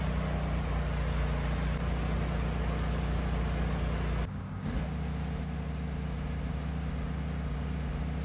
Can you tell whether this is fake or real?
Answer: real